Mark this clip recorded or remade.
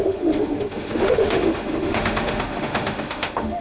remade